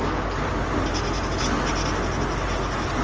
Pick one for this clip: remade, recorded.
recorded